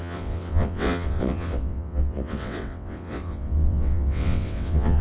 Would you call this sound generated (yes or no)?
yes